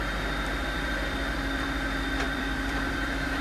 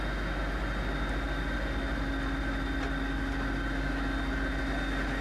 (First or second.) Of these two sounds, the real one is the second